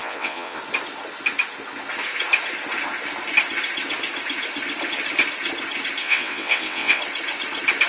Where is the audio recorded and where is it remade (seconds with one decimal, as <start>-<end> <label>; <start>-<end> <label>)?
0.0-0.6 remade; 0.6-6.0 recorded; 6.0-7.0 remade; 7.0-7.9 recorded